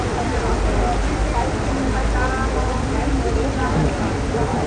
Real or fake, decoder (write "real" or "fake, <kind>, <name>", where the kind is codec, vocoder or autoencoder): real